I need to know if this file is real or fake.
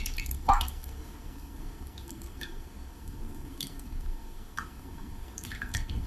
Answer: fake